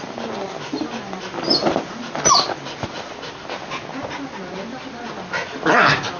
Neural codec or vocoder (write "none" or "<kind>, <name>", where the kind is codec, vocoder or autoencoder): none